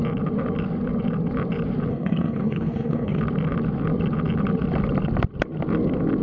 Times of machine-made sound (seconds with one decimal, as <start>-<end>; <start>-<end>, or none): 1.9-3.2